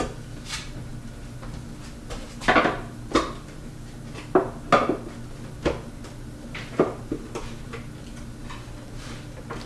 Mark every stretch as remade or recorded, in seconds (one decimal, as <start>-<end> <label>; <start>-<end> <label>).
0.0-9.7 recorded